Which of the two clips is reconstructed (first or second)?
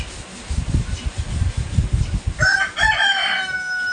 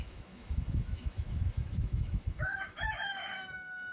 second